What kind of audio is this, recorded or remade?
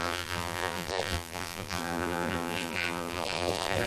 remade